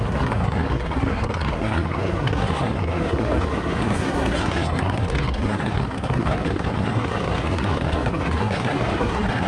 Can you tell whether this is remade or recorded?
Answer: remade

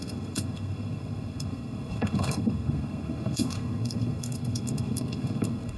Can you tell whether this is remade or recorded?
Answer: remade